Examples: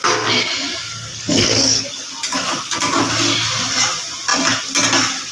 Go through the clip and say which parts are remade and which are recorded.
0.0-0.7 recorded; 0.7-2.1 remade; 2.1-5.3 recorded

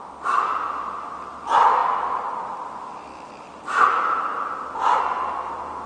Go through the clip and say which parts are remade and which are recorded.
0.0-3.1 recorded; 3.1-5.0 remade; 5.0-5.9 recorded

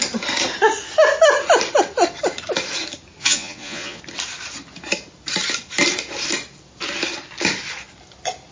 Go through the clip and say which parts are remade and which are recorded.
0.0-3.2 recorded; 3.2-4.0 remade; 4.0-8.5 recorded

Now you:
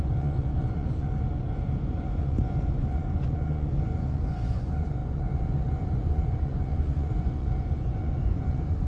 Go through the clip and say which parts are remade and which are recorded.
0.0-8.9 remade

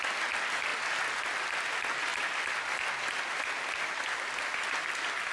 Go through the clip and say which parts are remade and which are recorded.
0.0-5.3 recorded

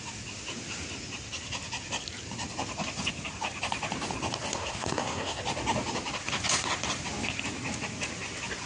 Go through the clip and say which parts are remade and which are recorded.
0.0-4.5 recorded; 4.5-5.4 remade; 5.4-8.7 recorded